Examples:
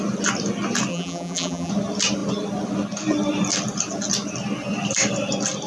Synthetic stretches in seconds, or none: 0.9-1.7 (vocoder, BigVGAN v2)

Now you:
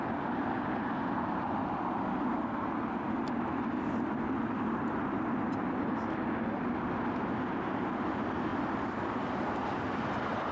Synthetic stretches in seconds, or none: none

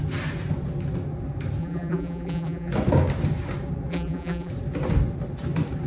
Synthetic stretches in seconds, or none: 1.6-2.7 (vocoder, BigVGAN v2); 3.9-4.5

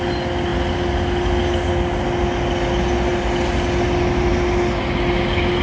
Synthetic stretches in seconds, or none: none

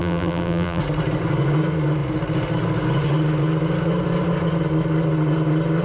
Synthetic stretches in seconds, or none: 0.0-0.8 (vocoder, BigVGAN v2)

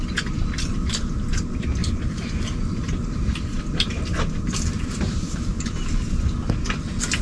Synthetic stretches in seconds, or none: 1.8-5.4 (vocoder, BigVGAN v2)

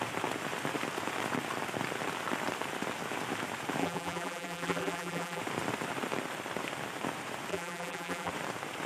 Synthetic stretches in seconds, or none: 3.8-5.4 (vocoder, BigVGAN v2); 7.5-8.3

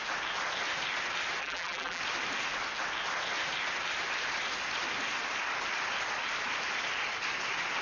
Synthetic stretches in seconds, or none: 1.4-2.0 (vocoder, BigVGAN v2)